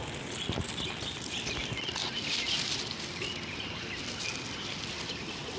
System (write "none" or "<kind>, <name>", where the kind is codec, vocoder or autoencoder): none